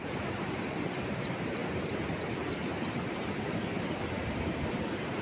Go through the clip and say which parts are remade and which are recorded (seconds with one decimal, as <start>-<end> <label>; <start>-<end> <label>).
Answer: 0.0-1.6 remade; 1.6-4.7 recorded; 4.7-5.2 remade